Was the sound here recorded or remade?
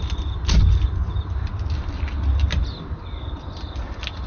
recorded